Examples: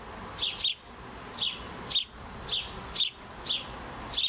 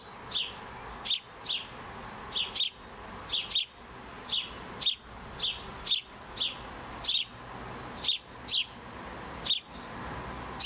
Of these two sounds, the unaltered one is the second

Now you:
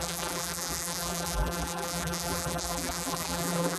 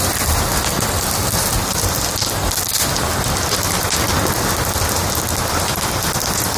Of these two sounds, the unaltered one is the second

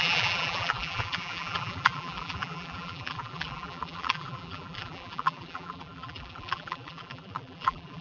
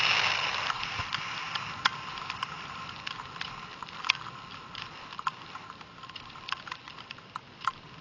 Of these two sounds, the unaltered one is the second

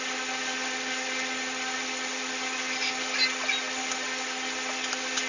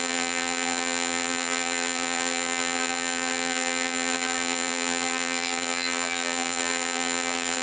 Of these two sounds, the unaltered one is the first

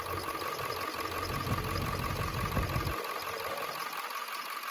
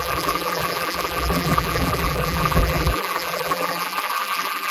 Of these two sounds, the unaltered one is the first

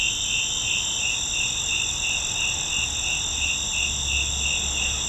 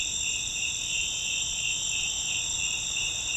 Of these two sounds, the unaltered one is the first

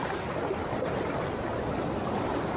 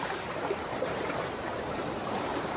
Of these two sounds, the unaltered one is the first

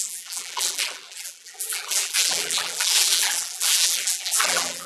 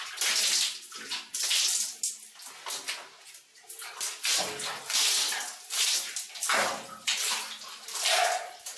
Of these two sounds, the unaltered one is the second